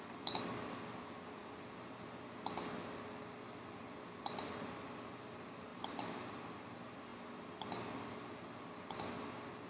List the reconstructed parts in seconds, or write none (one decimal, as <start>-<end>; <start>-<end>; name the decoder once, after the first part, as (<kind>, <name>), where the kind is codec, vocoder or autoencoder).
none